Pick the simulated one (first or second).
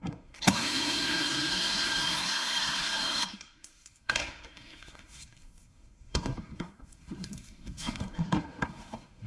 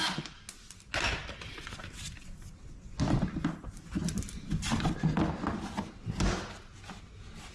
first